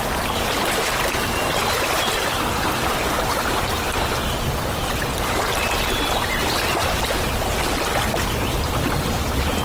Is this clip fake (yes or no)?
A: yes